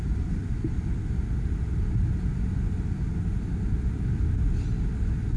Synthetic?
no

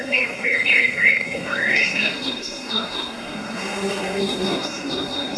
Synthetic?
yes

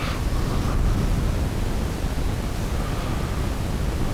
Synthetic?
no